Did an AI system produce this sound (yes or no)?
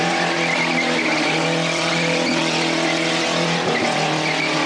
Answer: no